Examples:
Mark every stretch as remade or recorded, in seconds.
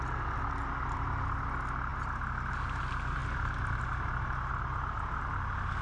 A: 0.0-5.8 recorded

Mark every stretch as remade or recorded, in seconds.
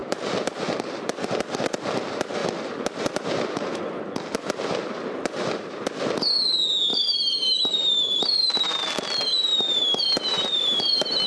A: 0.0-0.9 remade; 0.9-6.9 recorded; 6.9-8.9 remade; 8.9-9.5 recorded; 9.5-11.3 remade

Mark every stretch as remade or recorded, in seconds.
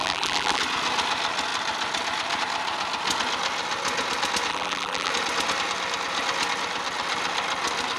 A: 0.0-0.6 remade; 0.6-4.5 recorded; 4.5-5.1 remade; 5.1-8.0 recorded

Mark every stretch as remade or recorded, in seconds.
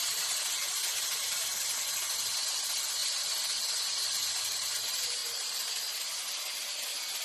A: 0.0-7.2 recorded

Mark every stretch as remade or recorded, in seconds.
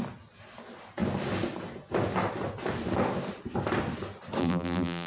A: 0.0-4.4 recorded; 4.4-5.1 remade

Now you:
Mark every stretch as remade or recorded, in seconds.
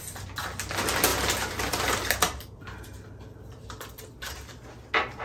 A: 0.0-1.1 recorded; 1.1-4.2 remade; 4.2-5.2 recorded